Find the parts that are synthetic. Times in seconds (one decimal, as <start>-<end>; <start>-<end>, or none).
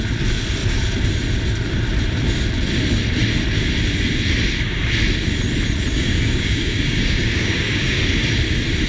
5.9-8.0